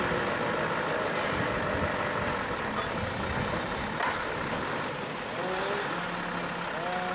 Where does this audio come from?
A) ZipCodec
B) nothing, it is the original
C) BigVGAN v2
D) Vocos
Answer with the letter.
B